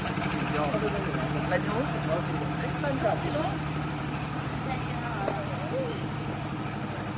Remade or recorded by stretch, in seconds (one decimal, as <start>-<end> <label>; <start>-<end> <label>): 0.0-2.3 recorded; 2.3-6.6 remade; 6.6-7.2 recorded